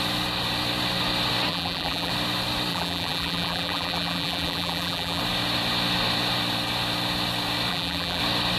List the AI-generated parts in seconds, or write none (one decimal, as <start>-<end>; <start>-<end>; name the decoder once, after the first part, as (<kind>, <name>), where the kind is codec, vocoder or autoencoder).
1.5-2.1 (vocoder, BigVGAN v2); 2.7-5.2; 7.7-8.2